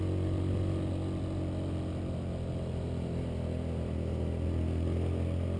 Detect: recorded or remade recorded